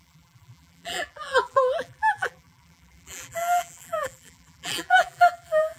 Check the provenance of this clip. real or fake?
fake